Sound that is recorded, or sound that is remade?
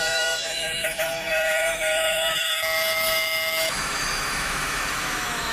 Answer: remade